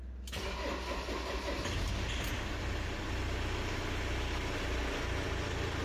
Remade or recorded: recorded